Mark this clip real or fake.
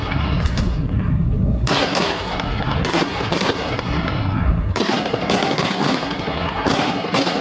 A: fake